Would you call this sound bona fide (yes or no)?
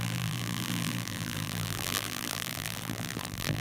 no